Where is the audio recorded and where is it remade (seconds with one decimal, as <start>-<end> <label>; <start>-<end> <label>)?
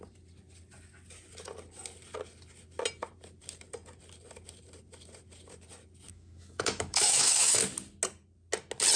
0.0-6.1 recorded; 6.1-7.6 remade; 7.6-9.0 recorded